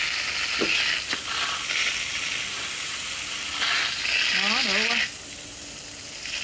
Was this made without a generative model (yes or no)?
yes